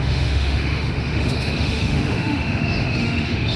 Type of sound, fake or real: fake